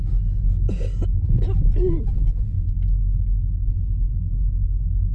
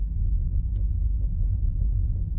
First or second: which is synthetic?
second